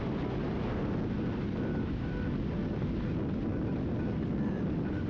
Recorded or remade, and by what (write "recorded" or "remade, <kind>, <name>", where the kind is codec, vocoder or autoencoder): recorded